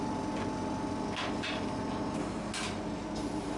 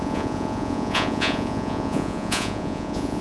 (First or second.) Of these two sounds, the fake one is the second